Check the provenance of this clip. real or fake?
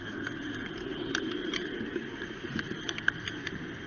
real